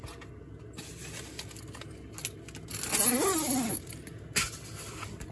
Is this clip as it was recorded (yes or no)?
yes